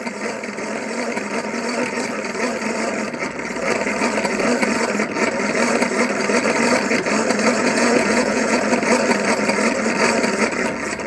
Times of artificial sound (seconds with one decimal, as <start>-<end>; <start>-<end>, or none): 7.6-8.6